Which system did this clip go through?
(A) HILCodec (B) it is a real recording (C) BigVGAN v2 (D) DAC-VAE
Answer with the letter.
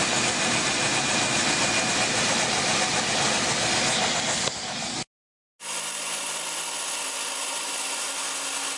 B